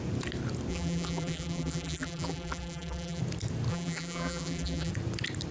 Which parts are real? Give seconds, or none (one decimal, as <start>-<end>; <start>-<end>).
0.0-0.7; 3.2-3.7; 4.9-5.5